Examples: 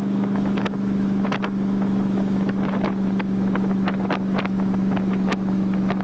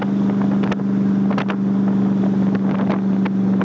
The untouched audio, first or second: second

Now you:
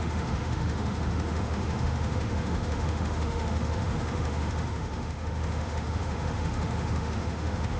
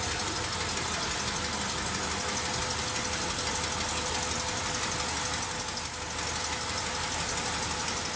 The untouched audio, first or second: second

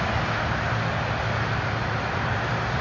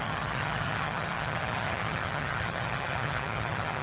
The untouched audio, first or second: first